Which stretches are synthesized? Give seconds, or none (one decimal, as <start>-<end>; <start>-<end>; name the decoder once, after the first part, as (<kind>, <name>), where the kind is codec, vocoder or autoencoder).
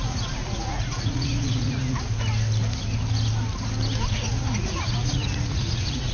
0.0-1.8 (vocoder, Vocos); 4.1-6.1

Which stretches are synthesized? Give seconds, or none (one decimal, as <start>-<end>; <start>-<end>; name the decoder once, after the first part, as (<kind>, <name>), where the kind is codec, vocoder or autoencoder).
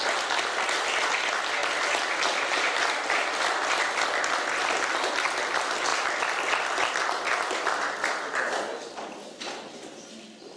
none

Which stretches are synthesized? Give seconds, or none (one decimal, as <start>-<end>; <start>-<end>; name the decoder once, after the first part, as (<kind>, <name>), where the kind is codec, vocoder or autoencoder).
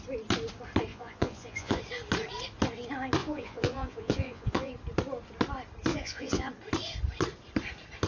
0.9-1.8 (vocoder, Vocos); 3.2-4.7; 5.9-6.5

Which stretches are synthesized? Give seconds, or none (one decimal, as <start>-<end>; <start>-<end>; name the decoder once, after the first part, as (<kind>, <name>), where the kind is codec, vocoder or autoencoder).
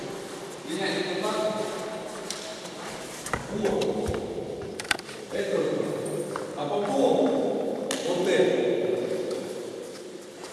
none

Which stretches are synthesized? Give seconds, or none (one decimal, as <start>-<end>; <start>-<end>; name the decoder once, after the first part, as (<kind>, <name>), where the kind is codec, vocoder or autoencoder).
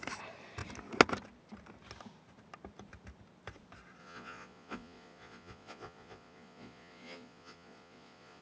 4.0-8.4 (vocoder, Vocos)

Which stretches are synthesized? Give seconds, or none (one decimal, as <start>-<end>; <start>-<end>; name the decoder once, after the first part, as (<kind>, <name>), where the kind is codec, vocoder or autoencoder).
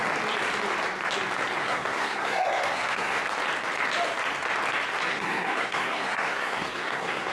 1.6-3.2 (codec, SNAC); 5.1-7.3